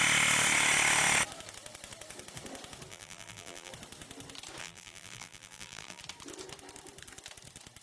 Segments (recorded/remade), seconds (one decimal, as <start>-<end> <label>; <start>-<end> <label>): 0.0-2.9 recorded; 2.9-3.7 remade; 3.7-4.6 recorded; 4.6-6.0 remade; 6.0-7.8 recorded